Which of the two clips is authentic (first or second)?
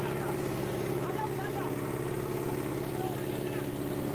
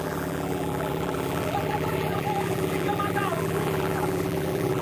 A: first